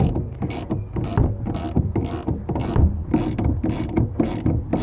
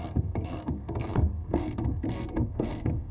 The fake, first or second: second